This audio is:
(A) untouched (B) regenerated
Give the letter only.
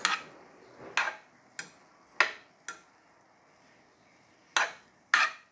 A